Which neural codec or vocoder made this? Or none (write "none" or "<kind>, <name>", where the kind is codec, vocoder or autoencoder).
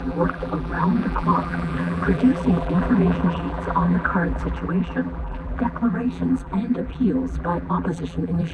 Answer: vocoder, BigVGAN v2